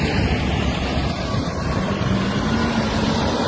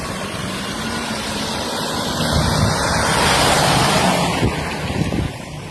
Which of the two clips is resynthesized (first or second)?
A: second